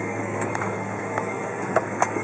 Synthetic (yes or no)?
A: yes